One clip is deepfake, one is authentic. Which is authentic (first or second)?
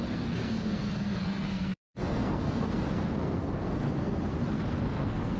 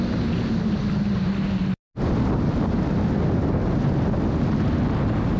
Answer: second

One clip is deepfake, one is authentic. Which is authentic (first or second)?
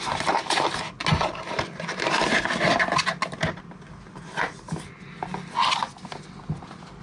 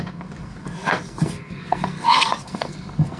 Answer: first